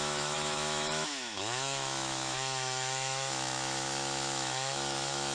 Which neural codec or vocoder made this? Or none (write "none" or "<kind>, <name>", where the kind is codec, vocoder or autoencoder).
autoencoder, DAC-VAE